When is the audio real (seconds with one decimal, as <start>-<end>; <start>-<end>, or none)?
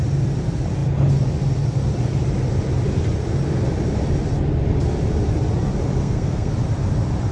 0.0-6.0; 6.5-7.3